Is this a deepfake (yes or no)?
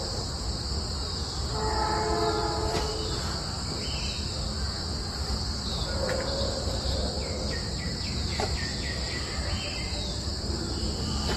no